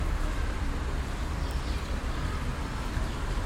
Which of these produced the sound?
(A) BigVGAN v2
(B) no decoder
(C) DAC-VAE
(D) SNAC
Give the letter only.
B